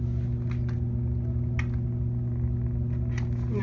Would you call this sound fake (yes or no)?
no